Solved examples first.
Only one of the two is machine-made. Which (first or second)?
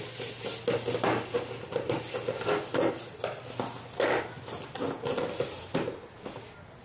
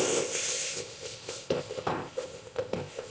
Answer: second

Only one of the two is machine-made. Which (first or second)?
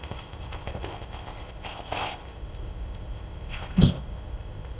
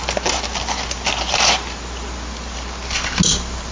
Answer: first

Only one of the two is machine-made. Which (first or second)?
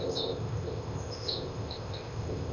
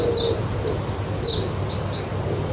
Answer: first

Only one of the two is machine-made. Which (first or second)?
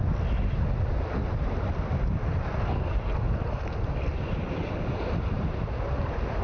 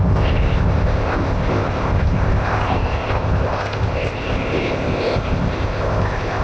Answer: second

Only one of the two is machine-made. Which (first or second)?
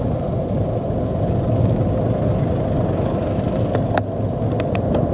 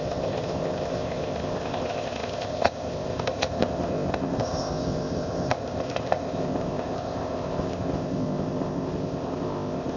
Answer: second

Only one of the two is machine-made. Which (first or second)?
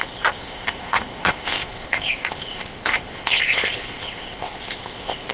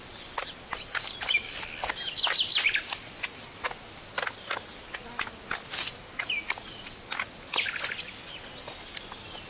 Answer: first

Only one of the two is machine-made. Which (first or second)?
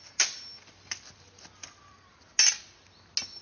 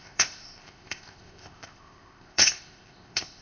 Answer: second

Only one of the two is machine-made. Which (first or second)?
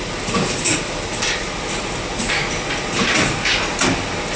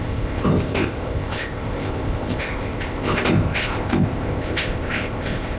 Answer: second